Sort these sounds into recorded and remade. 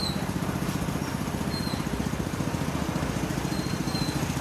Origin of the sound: recorded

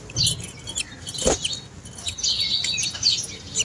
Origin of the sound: recorded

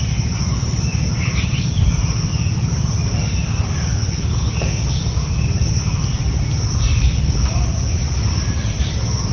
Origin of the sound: recorded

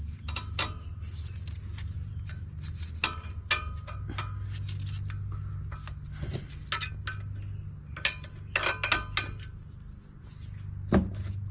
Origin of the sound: recorded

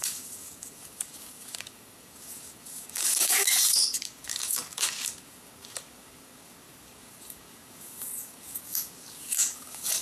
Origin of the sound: remade